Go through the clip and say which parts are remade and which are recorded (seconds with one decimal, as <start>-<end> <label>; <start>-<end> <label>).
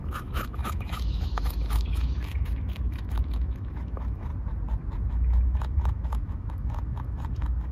0.0-4.3 remade; 4.3-5.1 recorded; 5.1-7.7 remade